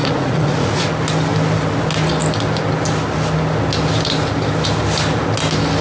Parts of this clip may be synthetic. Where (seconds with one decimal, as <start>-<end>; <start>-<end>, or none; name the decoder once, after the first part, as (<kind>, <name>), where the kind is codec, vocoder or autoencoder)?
0.0-0.8 (vocoder, Vocos)

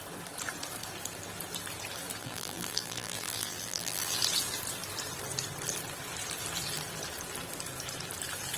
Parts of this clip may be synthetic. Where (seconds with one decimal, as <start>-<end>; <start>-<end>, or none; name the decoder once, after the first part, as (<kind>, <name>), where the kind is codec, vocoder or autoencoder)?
2.2-4.2 (vocoder, BigVGAN v2)

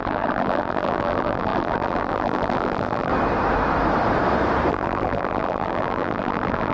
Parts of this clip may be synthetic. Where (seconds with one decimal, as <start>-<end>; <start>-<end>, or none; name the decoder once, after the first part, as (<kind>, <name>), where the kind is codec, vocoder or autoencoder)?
0.0-3.1 (vocoder, BigVGAN v2); 4.7-6.7

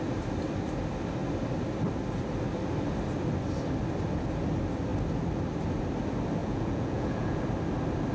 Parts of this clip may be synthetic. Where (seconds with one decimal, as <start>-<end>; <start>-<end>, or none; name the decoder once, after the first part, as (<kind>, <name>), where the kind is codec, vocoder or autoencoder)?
6.4-7.4 (vocoder, Vocos)

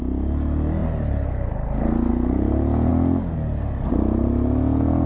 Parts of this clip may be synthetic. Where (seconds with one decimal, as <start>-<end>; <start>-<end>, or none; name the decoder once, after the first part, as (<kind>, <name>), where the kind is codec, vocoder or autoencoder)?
0.8-2.1 (vocoder, BigVGAN v2)

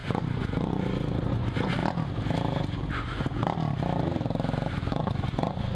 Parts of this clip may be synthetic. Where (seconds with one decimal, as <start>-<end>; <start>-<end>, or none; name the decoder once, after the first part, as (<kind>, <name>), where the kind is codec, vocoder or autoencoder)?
0.0-1.8 (vocoder, Vocos); 2.9-3.4; 4.7-5.8

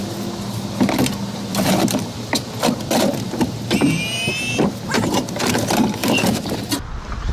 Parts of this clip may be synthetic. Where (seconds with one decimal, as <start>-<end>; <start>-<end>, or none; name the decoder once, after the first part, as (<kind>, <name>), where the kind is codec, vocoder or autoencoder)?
1.5-4.7 (vocoder, BigVGAN v2); 6.0-7.3

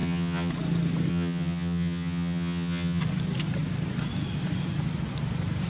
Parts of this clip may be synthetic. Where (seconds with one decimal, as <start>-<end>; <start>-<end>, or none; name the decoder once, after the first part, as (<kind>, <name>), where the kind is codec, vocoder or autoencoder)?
0.0-0.5 (vocoder, HiFi-GAN); 1.1-3.0